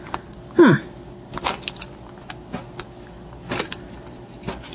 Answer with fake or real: real